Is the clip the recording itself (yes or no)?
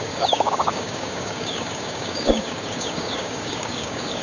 no